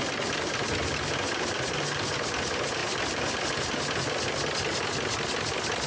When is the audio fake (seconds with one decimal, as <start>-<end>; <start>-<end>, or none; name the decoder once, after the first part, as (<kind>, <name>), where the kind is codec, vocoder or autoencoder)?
2.8-3.5 (vocoder, BigVGAN v2)